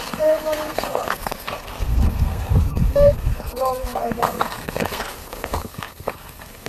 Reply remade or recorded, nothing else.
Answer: remade